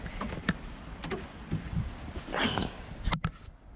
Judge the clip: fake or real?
fake